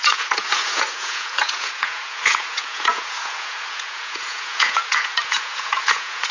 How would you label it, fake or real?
fake